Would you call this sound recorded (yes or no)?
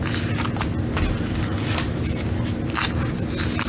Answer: yes